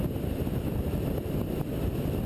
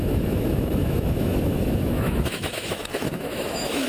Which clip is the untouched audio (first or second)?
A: first